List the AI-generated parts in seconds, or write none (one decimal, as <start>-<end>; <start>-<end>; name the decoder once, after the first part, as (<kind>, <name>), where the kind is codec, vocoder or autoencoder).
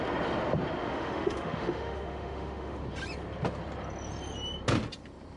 0.8-2.8 (autoencoder, DAC-VAE)